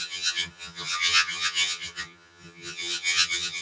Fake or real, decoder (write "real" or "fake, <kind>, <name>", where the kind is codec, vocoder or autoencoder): fake, vocoder, HiFi-GAN